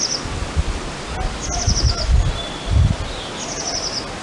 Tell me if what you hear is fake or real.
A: real